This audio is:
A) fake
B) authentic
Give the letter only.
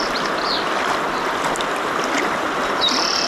B